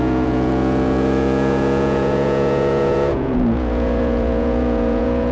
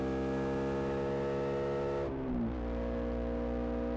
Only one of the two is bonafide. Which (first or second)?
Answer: second